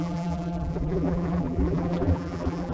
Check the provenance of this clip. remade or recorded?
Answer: remade